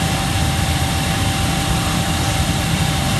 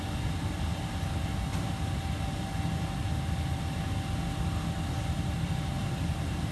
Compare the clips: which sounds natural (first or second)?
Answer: second